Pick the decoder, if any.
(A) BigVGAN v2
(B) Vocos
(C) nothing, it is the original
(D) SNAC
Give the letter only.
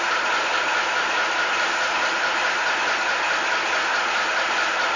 C